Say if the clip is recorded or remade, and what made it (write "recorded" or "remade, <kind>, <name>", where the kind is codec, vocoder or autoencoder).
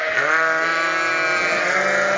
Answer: recorded